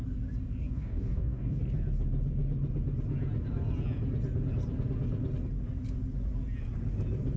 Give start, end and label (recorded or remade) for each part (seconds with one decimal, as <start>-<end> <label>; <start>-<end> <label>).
0.0-0.7 recorded; 0.7-1.6 remade; 1.6-7.4 recorded